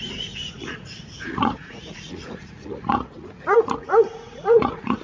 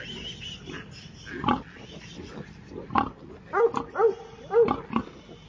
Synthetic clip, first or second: first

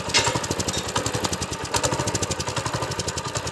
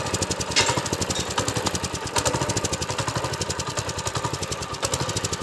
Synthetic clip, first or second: second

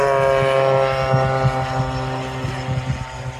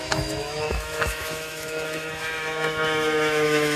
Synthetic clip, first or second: second